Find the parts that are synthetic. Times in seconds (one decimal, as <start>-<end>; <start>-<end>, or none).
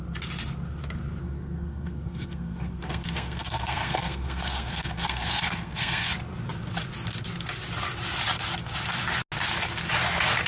1.2-6.1